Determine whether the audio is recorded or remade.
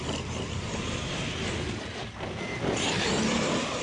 recorded